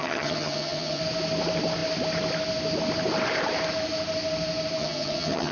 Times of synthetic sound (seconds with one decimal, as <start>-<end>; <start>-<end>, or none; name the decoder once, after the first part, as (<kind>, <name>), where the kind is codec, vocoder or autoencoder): 0.0-1.0 (vocoder, HiFi-GAN); 4.8-5.5